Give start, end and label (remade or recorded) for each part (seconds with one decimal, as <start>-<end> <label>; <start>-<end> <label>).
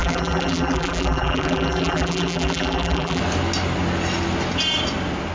0.0-3.2 remade; 3.2-5.3 recorded